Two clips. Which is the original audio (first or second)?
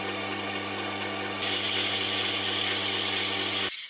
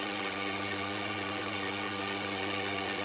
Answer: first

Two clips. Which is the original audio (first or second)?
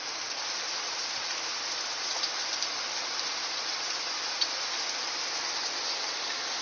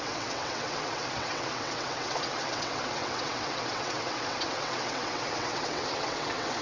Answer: first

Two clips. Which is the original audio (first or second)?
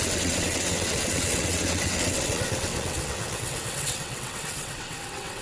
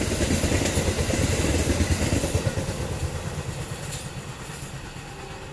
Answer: second